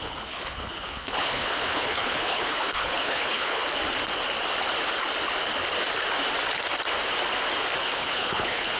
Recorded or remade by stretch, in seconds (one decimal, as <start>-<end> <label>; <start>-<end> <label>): 0.0-3.6 remade; 3.6-7.8 recorded; 7.8-8.8 remade